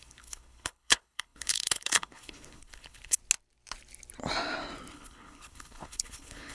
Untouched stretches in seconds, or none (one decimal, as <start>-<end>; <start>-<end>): 3.2-4.9